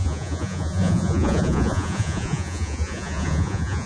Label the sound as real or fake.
fake